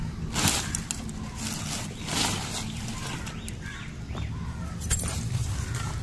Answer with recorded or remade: recorded